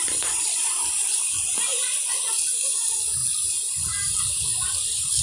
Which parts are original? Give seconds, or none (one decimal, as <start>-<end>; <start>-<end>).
1.7-2.8; 3.2-4.2